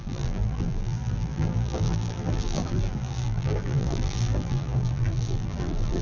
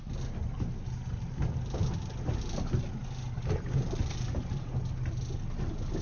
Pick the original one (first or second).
second